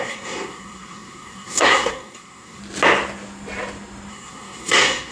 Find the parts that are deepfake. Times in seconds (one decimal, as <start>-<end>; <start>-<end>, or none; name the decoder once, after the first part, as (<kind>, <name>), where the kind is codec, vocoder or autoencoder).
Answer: 0.0-2.6 (codec, SNAC); 4.1-5.1